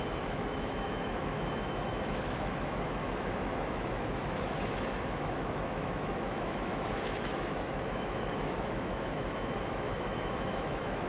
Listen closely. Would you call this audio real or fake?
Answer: fake